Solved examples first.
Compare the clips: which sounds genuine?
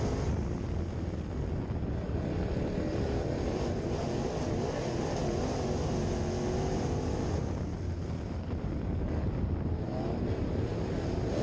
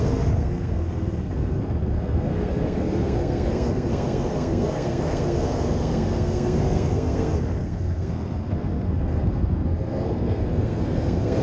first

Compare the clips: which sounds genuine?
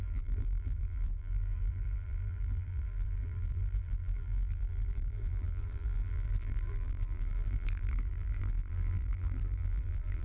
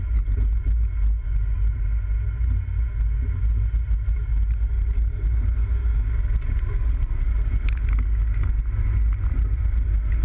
second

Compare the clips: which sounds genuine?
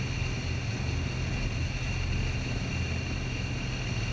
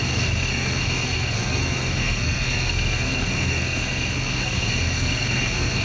first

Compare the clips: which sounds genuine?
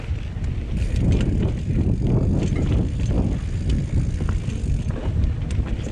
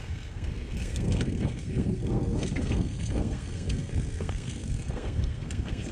first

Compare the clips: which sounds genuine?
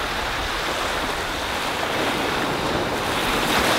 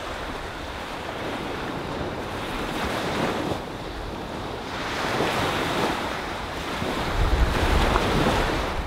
first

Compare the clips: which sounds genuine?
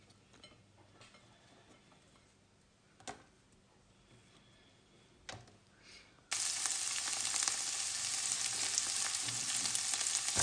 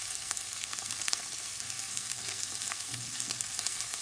first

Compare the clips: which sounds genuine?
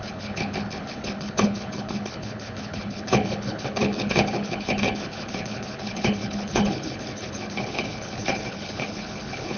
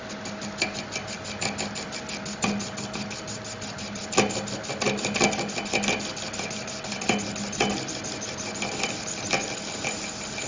second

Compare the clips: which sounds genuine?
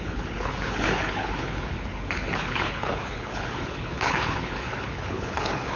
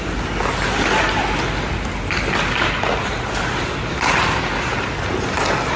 second